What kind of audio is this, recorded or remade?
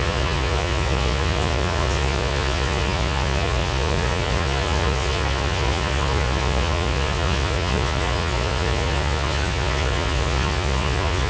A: remade